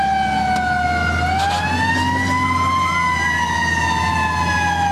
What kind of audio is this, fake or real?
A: real